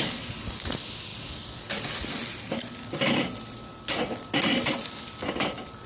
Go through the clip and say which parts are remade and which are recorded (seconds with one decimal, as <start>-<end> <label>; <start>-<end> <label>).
0.0-5.9 recorded